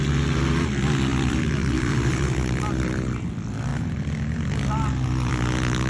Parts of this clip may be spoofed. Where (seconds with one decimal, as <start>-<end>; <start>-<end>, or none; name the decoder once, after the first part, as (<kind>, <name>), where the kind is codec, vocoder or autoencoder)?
1.1-3.2 (vocoder, BigVGAN v2)